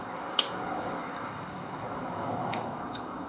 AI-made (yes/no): yes